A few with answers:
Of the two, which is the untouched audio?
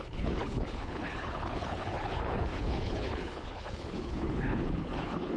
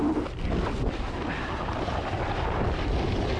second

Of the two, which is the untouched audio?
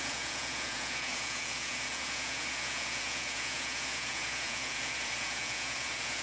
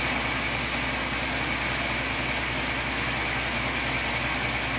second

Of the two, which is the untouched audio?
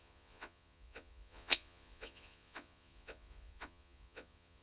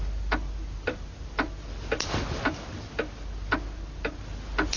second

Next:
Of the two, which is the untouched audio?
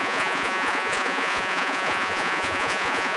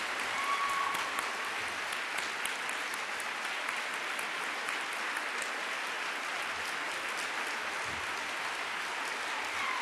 second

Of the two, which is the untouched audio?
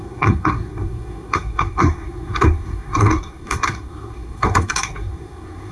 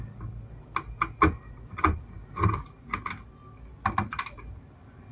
second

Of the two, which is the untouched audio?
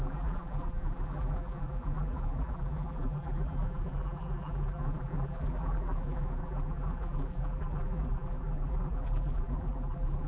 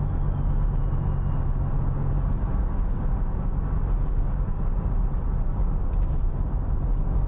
second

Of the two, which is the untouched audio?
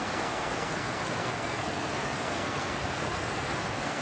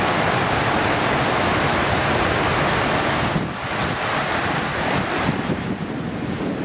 second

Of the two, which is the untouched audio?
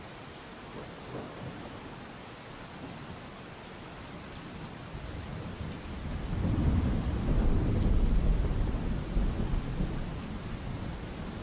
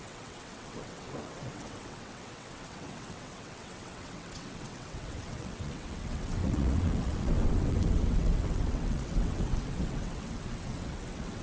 first